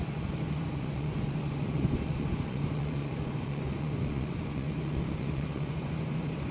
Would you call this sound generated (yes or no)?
yes